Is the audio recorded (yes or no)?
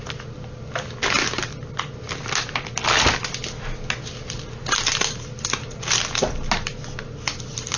yes